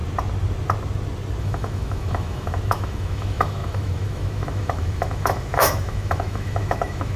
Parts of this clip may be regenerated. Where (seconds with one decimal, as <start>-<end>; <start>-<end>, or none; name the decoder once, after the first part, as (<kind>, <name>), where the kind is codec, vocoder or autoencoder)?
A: 1.4-7.2 (autoencoder, DAC-VAE)